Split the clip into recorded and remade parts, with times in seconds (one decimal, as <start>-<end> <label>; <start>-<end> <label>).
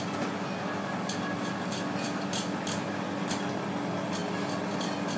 0.0-5.2 recorded